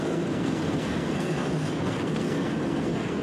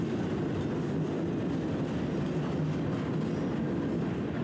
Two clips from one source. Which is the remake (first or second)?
first